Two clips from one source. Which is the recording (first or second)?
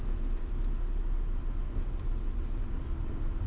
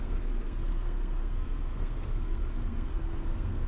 first